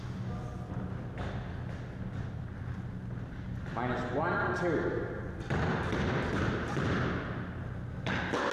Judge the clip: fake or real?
real